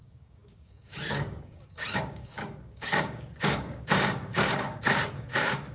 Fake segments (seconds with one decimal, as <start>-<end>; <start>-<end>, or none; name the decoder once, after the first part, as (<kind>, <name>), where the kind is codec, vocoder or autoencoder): 0.0-5.7 (codec, DAC)